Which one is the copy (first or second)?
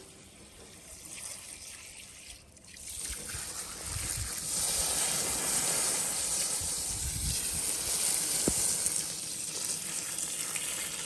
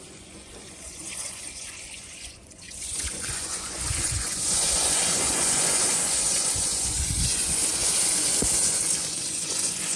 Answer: second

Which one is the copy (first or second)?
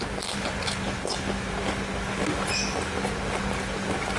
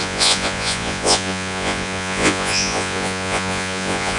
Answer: second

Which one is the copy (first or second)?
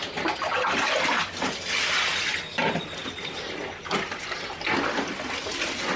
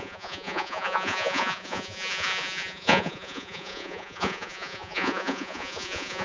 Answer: second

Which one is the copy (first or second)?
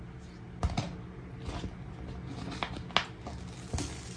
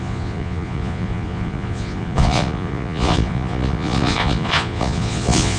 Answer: second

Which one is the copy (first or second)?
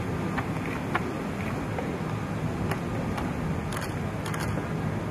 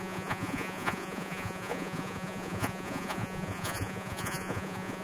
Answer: second